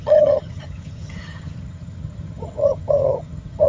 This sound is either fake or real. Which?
fake